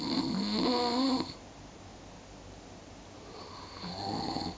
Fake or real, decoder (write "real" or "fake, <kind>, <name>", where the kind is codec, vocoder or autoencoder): real